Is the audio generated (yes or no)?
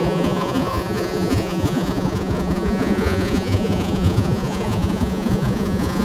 yes